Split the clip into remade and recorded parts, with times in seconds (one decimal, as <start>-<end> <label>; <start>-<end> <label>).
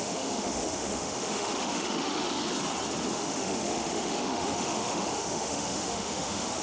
0.0-2.4 remade; 2.4-3.1 recorded; 3.1-6.6 remade